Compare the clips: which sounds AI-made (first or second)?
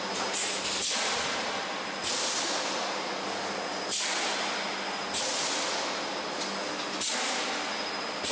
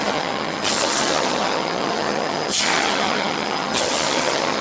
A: second